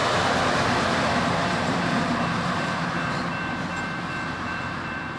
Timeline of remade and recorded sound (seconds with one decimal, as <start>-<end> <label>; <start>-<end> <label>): 0.0-3.7 remade; 3.7-4.4 recorded; 4.4-5.2 remade

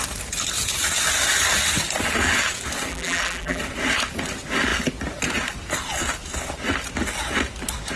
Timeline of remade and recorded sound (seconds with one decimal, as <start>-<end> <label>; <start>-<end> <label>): 0.0-2.9 recorded; 2.9-3.6 remade; 3.6-8.0 recorded

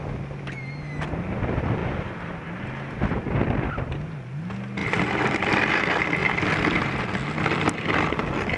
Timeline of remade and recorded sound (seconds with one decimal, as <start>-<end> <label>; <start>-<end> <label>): 0.0-4.8 recorded; 4.8-5.7 remade; 5.7-6.2 recorded; 6.2-7.0 remade; 7.0-8.6 recorded

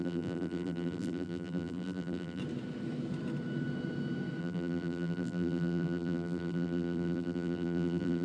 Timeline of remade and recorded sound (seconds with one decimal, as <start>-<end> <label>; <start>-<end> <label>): 0.0-2.4 remade; 2.4-4.4 recorded; 4.4-8.2 remade

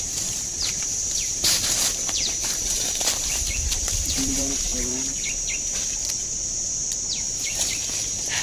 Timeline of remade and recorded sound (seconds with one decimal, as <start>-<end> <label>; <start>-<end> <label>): 0.0-4.7 remade; 4.7-6.0 recorded; 6.0-6.8 remade; 6.8-7.4 recorded; 7.4-8.4 remade

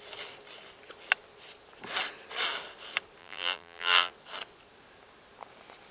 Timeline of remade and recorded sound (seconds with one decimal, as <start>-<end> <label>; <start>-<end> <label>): 0.0-3.2 recorded; 3.2-4.1 remade; 4.1-5.9 recorded